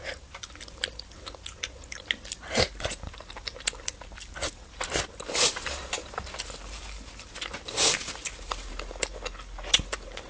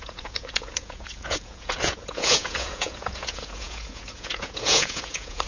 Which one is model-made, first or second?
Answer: second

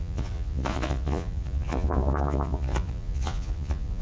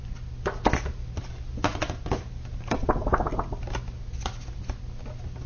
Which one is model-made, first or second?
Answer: first